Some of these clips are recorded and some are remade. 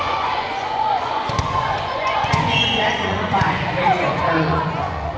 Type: remade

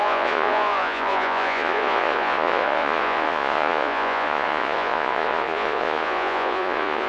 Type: remade